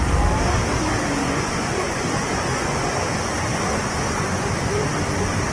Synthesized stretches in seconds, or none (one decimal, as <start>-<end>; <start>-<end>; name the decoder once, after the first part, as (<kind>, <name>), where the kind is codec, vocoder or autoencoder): 1.2-4.5 (vocoder, Vocos)